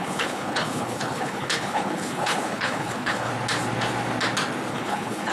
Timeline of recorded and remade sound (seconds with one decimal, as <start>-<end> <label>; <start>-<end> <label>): 0.0-3.3 remade; 3.3-4.7 recorded; 4.7-5.3 remade